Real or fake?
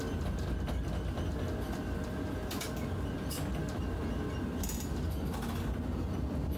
real